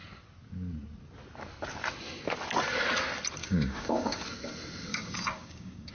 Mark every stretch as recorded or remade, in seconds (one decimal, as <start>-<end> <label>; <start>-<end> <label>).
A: 0.0-3.4 recorded; 3.4-4.2 remade; 4.2-4.9 recorded; 4.9-5.9 remade